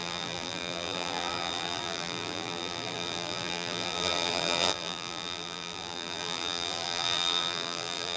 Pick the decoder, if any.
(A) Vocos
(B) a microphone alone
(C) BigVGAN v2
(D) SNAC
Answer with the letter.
C